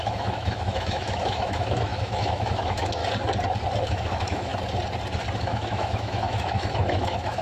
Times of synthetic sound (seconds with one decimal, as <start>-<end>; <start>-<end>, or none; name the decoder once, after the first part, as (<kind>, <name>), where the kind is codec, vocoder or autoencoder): 0.0-3.0 (autoencoder, DAC-VAE); 3.8-4.5; 5.4-7.4